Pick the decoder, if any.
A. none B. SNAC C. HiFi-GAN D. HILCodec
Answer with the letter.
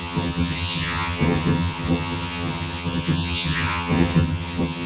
C